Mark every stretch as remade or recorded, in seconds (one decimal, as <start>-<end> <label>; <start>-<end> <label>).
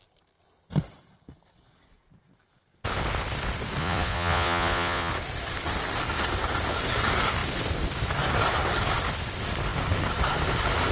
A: 0.0-3.8 recorded; 3.8-5.1 remade; 5.1-10.9 recorded